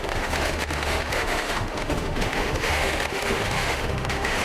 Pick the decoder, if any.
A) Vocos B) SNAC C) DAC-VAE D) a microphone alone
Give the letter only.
C